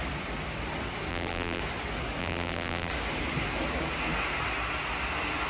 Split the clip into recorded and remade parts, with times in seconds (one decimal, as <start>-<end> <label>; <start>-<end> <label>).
0.0-1.1 recorded; 1.1-1.6 remade; 1.6-2.2 recorded; 2.2-2.9 remade; 2.9-5.5 recorded

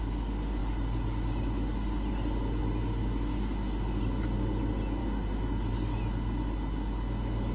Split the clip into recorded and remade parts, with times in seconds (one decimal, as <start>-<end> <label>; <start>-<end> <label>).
0.0-7.5 recorded

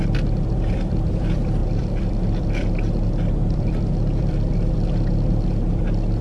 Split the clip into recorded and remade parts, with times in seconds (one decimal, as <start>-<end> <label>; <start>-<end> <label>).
0.0-6.2 remade

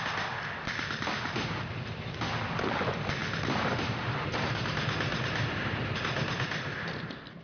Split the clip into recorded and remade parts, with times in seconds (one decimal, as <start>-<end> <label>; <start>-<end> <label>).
0.0-7.4 remade

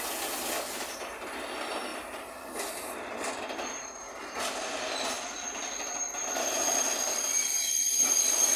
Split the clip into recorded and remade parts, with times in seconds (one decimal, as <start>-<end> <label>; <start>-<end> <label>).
0.0-1.9 recorded; 1.9-4.2 remade; 4.2-8.6 recorded

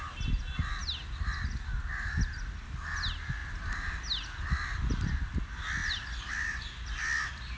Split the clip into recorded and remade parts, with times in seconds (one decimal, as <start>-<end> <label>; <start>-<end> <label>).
0.0-5.8 recorded; 5.8-6.3 remade; 6.3-7.6 recorded